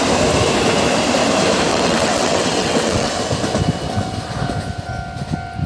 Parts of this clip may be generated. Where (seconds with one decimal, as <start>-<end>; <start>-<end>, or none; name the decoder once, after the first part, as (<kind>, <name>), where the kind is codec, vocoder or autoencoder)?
1.7-3.1 (vocoder, WaveNeXt)